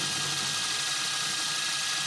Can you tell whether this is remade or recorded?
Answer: recorded